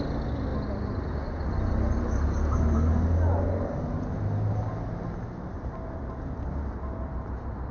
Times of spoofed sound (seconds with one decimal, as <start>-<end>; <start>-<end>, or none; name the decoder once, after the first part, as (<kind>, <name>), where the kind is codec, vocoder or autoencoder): none